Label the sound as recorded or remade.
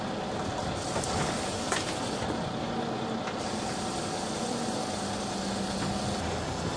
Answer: recorded